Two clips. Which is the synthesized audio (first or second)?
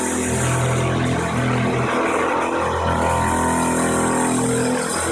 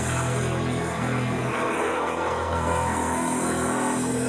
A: second